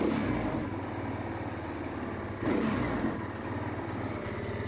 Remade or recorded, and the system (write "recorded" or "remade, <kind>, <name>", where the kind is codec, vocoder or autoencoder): recorded